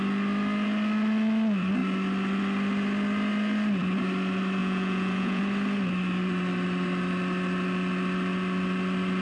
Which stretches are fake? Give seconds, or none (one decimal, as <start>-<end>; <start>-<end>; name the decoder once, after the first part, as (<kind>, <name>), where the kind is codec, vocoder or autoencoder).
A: 4.6-5.4 (vocoder, Vocos)